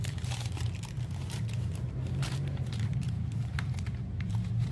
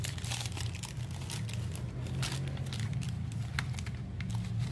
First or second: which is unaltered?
second